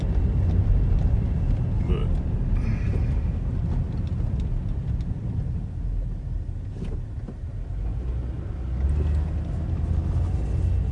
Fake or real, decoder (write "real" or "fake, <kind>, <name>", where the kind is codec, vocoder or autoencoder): real